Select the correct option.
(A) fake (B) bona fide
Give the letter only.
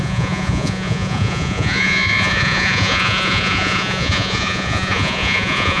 A